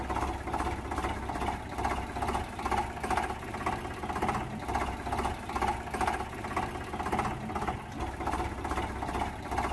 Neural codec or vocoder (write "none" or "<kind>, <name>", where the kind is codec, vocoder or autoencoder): none